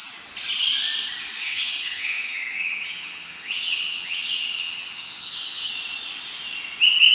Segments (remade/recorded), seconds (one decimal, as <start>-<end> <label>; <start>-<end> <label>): 0.0-1.4 recorded; 1.4-5.7 remade; 5.7-7.1 recorded